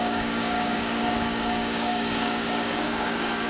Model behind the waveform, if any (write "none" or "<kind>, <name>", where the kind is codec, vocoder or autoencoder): codec, DAC